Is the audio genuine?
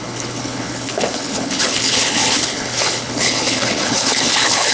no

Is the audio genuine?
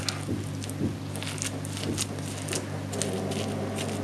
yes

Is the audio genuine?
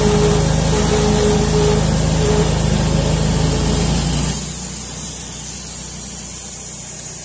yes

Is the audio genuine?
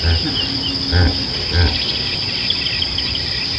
yes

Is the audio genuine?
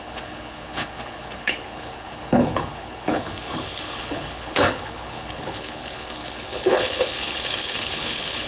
no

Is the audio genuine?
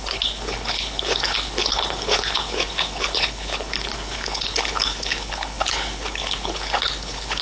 no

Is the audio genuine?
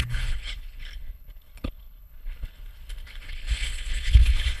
no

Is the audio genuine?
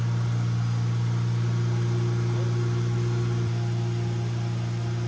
yes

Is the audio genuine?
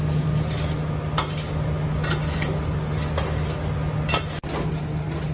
yes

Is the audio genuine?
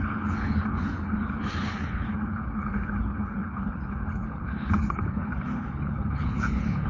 no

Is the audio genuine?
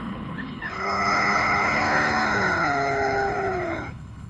no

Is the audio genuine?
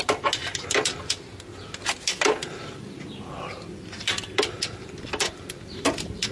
yes